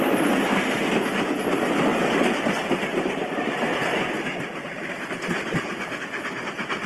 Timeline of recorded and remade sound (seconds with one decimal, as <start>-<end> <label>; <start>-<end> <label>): 0.0-1.9 recorded; 1.9-6.0 remade; 6.0-6.9 recorded